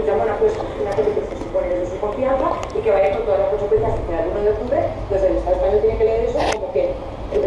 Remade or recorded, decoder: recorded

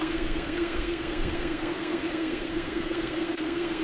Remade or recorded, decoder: remade, codec, SNAC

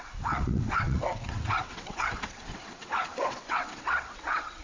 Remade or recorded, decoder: remade, vocoder, WaveNeXt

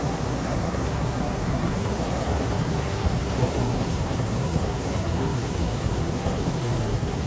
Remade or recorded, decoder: remade, codec, SNAC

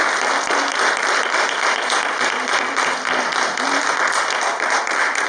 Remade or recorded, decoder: recorded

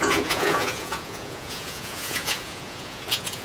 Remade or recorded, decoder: remade, vocoder, Vocos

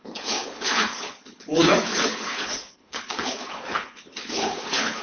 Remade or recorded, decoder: remade, codec, HILCodec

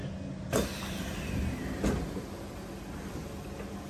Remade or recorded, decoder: recorded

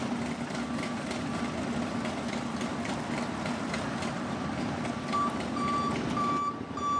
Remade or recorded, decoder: recorded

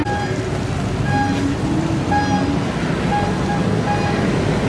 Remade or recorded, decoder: recorded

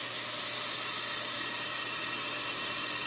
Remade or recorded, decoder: recorded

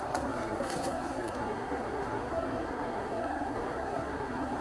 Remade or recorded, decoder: remade, codec, SNAC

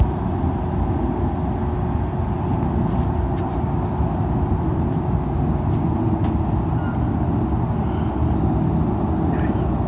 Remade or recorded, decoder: recorded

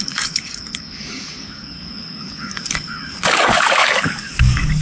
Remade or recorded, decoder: remade, codec, DAC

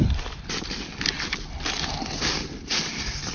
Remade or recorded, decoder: recorded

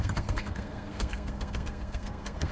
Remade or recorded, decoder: remade, codec, SNAC